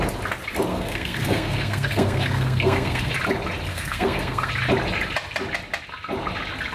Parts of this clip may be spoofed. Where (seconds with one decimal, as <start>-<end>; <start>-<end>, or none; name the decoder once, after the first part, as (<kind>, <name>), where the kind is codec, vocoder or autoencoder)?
0.7-3.1 (codec, SNAC); 3.7-4.5